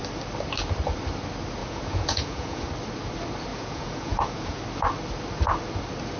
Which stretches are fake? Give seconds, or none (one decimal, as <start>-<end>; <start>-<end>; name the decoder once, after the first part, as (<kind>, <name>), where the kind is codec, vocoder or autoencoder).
1.6-2.7 (vocoder, Vocos); 3.5-4.6